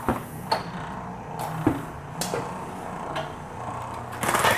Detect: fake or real real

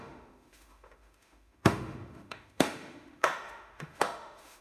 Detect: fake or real fake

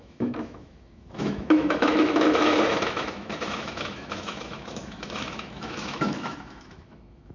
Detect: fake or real fake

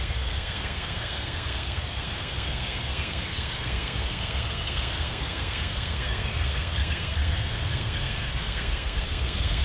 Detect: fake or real fake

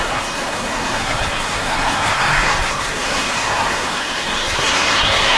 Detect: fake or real fake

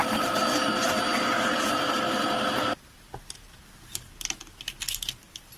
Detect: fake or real real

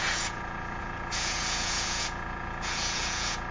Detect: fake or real fake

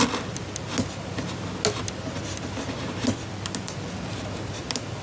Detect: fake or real real